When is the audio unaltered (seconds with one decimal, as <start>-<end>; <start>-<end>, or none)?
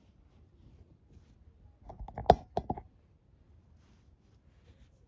0.0-5.1